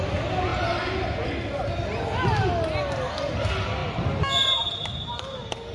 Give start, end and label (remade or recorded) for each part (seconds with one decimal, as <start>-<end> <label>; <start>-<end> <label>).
0.0-5.7 recorded